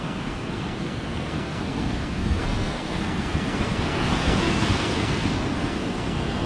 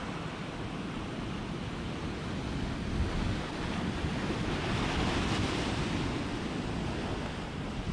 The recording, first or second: second